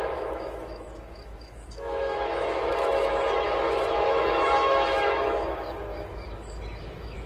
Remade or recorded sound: remade